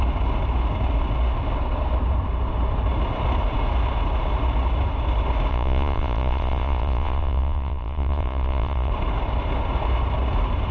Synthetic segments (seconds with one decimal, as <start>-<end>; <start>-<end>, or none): 5.5-8.9